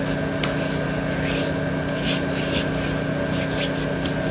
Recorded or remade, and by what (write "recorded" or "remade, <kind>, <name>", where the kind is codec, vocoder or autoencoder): recorded